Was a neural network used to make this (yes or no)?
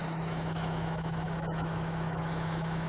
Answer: yes